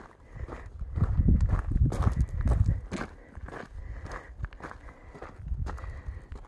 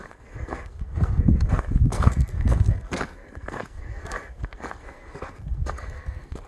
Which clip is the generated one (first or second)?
second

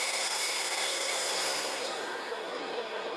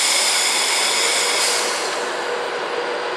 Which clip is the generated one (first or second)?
first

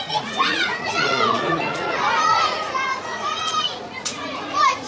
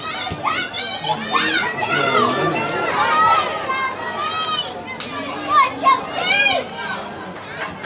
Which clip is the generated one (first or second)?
first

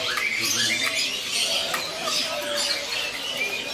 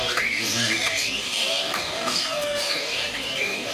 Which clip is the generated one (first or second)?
second